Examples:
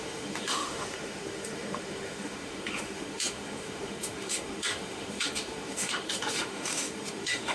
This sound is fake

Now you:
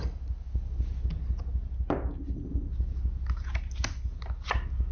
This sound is real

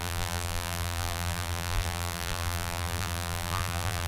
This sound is fake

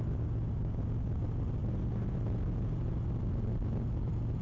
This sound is real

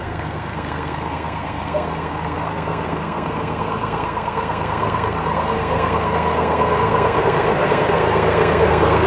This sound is fake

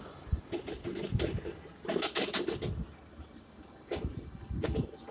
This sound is real